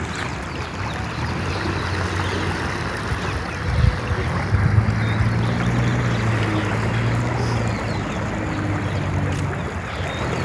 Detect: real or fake real